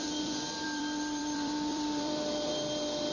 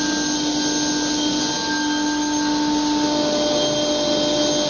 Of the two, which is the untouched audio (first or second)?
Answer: second